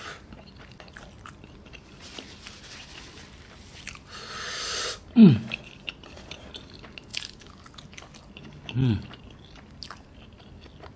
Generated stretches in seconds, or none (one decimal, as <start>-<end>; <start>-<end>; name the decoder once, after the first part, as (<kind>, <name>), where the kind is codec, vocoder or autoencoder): none